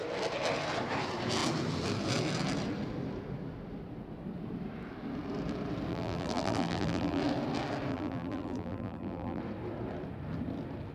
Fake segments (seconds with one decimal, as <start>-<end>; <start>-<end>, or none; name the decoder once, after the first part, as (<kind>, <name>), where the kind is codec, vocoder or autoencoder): 5.9-7.2 (vocoder, BigVGAN v2); 7.9-9.4